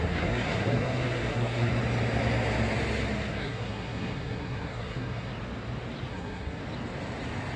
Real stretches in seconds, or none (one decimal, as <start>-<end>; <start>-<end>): 1.7-3.3; 5.3-6.1; 6.6-7.6